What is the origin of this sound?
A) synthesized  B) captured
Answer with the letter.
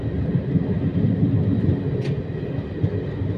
B